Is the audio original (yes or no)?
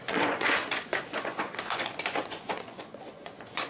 no